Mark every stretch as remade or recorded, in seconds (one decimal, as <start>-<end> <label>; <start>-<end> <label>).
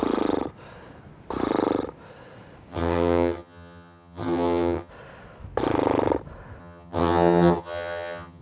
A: 0.0-2.7 recorded; 2.7-4.9 remade; 4.9-6.6 recorded; 6.6-8.4 remade